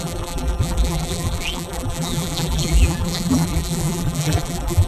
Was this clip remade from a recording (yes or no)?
yes